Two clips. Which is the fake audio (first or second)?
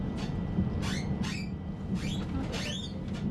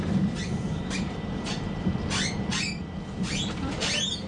second